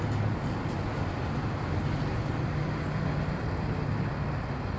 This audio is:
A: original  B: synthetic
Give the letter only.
A